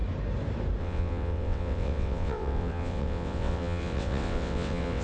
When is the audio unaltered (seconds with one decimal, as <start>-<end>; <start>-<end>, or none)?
0.0-0.8